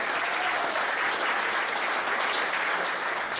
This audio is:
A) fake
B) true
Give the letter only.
B